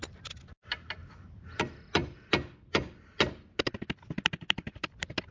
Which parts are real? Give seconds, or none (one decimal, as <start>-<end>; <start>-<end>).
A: 0.0-5.3